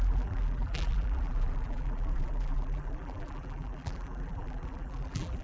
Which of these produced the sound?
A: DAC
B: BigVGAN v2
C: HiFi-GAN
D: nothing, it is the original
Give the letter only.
B